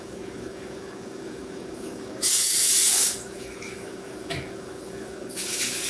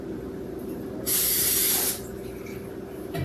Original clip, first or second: second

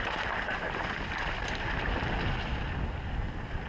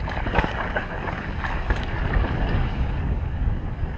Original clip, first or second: first